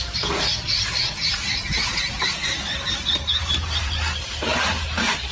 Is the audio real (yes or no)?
no